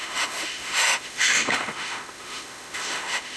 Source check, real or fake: fake